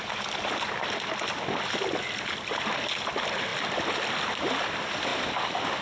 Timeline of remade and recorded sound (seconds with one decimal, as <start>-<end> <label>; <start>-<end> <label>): 0.0-5.8 recorded